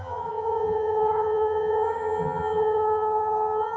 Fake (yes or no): yes